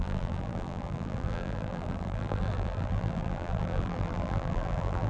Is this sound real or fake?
fake